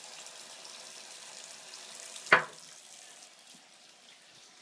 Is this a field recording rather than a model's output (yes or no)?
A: yes